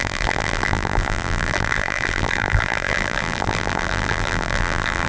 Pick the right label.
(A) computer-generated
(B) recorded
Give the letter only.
A